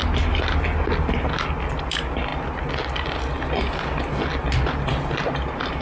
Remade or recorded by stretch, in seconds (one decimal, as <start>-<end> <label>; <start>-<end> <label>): 0.0-5.8 recorded